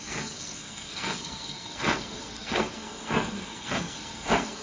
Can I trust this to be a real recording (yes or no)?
no